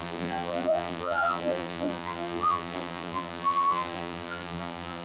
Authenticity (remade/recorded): remade